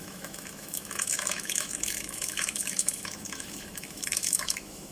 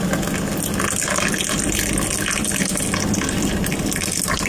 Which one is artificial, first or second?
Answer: first